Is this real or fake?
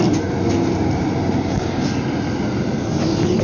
real